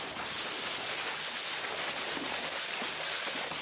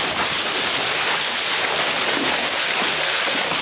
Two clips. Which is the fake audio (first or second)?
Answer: second